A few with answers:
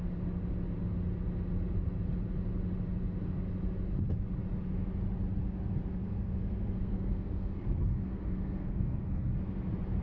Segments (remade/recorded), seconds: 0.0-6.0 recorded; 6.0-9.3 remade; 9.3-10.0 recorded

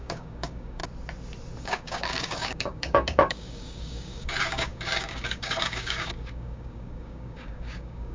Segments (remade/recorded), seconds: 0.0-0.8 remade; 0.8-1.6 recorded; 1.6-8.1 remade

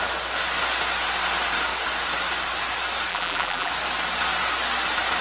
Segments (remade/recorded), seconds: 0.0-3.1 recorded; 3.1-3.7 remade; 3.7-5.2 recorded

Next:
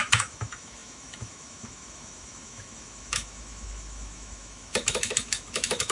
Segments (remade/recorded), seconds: 0.0-5.9 remade